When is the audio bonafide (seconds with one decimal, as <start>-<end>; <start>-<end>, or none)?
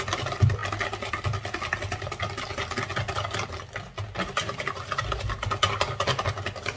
0.0-6.8